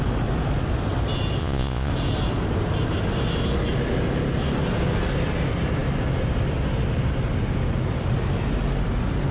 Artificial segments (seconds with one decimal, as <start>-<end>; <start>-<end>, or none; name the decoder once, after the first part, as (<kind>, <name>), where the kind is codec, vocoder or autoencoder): 1.4-1.9 (vocoder, Vocos)